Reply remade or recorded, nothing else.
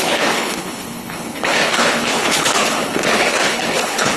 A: remade